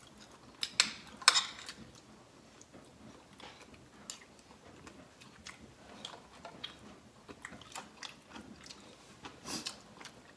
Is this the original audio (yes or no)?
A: yes